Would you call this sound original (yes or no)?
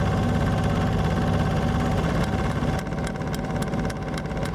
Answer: yes